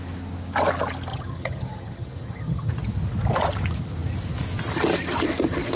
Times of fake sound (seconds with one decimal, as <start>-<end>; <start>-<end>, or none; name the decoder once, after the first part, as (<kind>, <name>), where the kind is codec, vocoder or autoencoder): 1.1-2.7 (vocoder, HiFi-GAN)